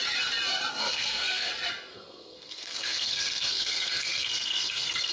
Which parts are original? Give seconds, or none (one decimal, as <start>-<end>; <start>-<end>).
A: 0.0-0.7; 1.5-1.9